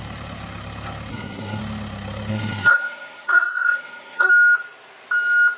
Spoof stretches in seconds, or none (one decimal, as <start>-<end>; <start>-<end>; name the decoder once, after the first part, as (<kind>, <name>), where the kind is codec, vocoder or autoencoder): 1.1-1.6 (codec, SNAC); 2.3-4.3